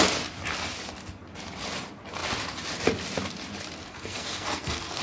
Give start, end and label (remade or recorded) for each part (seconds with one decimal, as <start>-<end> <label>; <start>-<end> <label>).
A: 0.0-3.8 recorded; 3.8-5.0 remade